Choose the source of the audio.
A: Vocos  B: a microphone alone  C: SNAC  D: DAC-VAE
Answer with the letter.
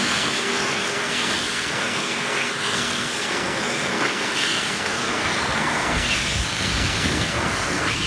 C